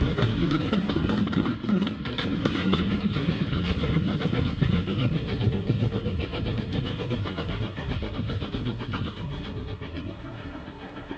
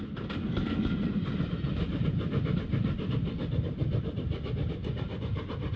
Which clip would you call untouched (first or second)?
second